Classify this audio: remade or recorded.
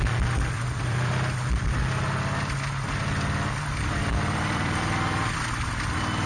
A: remade